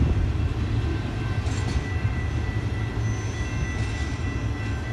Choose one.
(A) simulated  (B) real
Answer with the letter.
B